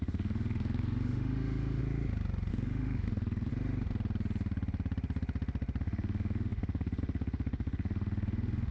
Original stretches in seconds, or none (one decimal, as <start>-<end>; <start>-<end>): 1.8-2.5; 3.5-5.8